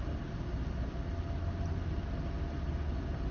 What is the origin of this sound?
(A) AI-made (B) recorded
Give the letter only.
B